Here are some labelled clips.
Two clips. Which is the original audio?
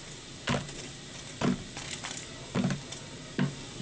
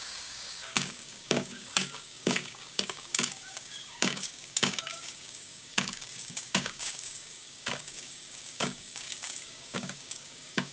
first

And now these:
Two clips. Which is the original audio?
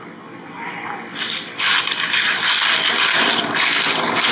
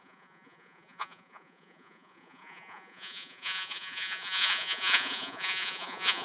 first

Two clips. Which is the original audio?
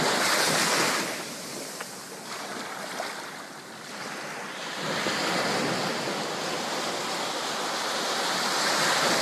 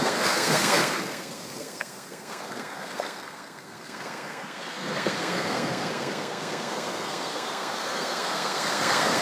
first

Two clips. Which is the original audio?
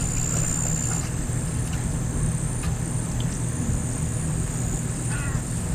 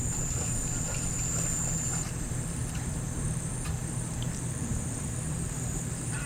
first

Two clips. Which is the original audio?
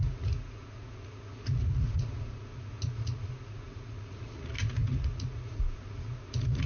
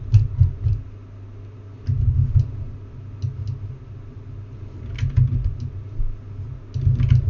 second